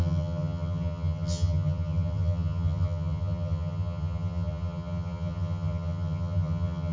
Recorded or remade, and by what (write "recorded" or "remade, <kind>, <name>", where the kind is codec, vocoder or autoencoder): remade, vocoder, HiFi-GAN